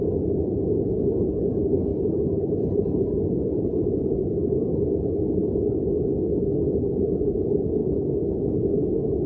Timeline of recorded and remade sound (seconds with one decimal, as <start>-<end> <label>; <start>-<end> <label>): 0.0-1.9 recorded; 1.9-4.1 remade; 4.1-9.3 recorded